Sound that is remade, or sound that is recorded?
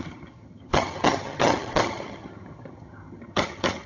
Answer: remade